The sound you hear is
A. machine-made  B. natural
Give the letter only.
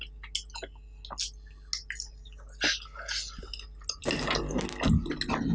B